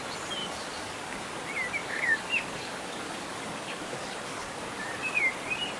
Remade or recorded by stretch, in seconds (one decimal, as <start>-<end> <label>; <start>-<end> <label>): 0.0-0.4 recorded; 0.4-1.3 remade; 1.3-1.8 recorded; 1.8-5.2 remade; 5.2-5.8 recorded